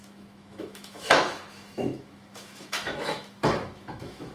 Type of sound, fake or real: fake